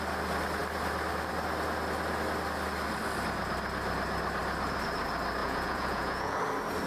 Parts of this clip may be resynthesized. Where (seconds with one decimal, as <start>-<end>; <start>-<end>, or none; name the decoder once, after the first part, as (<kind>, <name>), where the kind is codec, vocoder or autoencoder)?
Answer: 5.4-6.4 (vocoder, Vocos)